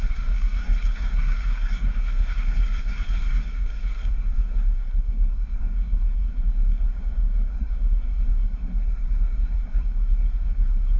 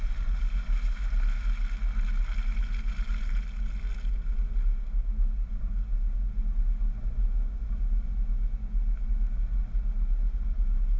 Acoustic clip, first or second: second